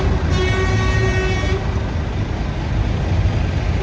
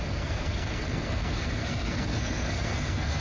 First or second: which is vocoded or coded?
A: second